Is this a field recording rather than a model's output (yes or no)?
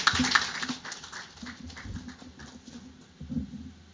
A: yes